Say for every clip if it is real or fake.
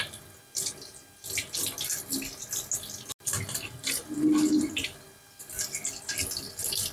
real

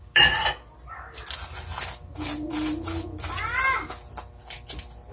real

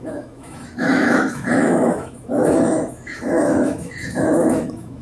fake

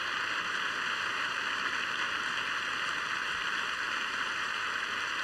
real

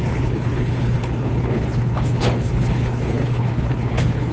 fake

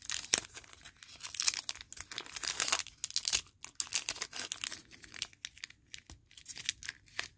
real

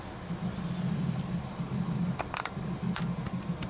real